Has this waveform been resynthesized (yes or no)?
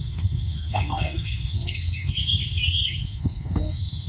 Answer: yes